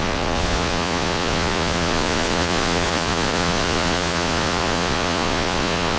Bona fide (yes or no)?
no